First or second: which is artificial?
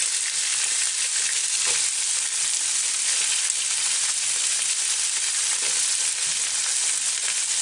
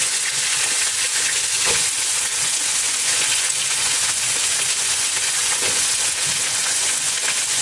second